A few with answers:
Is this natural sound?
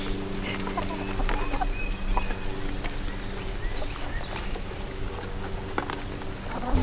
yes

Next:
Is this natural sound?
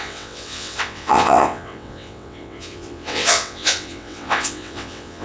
no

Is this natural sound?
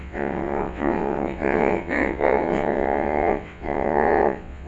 no